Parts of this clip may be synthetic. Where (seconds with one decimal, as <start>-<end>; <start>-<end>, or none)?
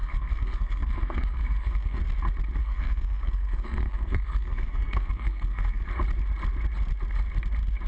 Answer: 0.0-2.0; 2.6-5.9